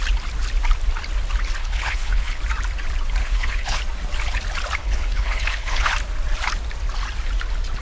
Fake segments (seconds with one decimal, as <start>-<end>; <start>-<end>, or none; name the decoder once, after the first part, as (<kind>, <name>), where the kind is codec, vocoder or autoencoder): 1.6-2.4 (codec, HILCodec); 3.2-3.8; 4.8-5.9

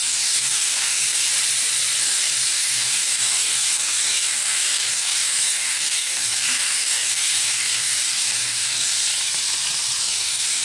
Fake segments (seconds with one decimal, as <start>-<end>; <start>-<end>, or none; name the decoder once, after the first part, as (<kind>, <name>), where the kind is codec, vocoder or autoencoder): 0.0-1.3 (codec, DAC); 2.0-8.9; 10.0-10.6